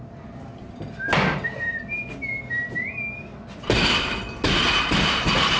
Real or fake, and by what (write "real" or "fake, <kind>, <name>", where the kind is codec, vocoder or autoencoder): real